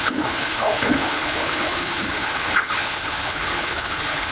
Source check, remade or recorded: remade